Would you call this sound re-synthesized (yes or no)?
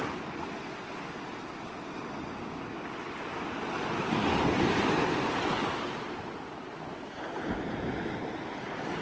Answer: no